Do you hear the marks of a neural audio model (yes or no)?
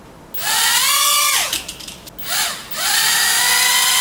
no